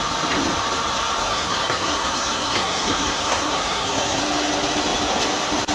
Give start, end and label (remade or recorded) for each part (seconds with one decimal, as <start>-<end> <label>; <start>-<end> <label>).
0.0-1.2 recorded; 1.2-4.2 remade; 4.2-5.7 recorded